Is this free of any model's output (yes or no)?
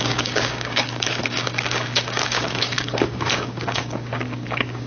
no